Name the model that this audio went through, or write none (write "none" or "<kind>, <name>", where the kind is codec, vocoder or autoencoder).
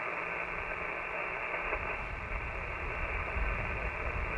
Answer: none